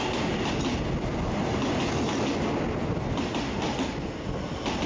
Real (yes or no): yes